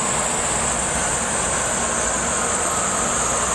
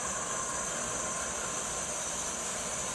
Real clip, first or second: first